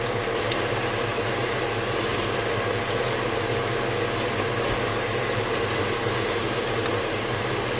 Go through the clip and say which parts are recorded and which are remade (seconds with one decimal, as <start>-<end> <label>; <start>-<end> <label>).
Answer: 0.0-4.9 recorded; 4.9-5.5 remade; 5.5-7.8 recorded